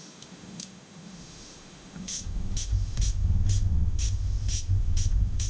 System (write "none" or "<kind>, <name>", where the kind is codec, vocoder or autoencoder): autoencoder, DAC-VAE